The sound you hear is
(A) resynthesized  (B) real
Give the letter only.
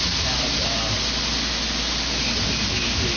B